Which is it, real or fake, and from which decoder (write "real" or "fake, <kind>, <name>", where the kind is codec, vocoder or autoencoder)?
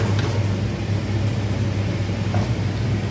real